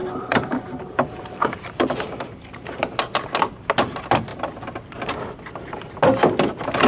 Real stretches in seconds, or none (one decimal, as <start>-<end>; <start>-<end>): 2.8-6.9